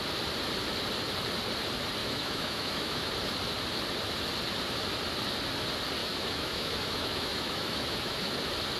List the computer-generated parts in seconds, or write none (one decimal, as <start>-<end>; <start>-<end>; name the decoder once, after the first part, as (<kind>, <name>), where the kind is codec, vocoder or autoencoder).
2.0-3.1 (autoencoder, DAC-VAE); 6.0-8.3